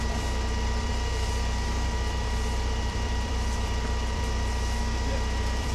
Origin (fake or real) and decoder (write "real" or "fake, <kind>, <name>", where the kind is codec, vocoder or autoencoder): fake, vocoder, BigVGAN v2